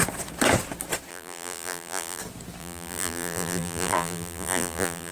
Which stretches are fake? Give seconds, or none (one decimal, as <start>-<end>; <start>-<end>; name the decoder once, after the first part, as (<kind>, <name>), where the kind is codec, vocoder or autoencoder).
1.1-2.2 (vocoder, BigVGAN v2); 2.6-5.1